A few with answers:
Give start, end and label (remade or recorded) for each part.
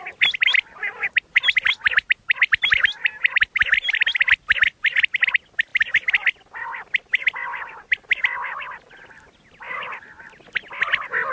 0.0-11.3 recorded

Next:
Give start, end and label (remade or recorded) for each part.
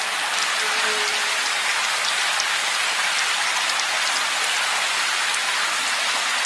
0.0-1.1 recorded; 1.1-2.3 remade; 2.3-6.5 recorded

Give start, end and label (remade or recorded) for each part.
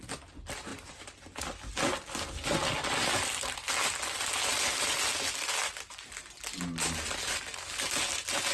0.0-0.7 recorded; 0.7-1.4 remade; 1.4-8.5 recorded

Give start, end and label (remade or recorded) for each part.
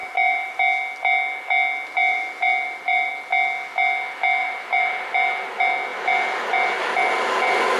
0.0-0.6 remade; 0.6-1.9 recorded; 1.9-3.1 remade; 3.1-4.4 recorded; 4.4-5.1 remade; 5.1-7.8 recorded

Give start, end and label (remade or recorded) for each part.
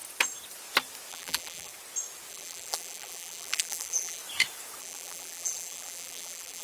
0.0-1.1 recorded; 1.1-1.7 remade; 1.7-2.3 recorded; 2.3-4.2 remade; 4.2-4.8 recorded; 4.8-6.6 remade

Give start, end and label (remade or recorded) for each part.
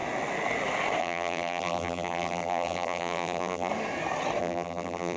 0.0-1.0 recorded; 1.0-3.7 remade; 3.7-4.4 recorded; 4.4-5.2 remade